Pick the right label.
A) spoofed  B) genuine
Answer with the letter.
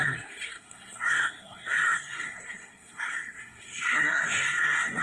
A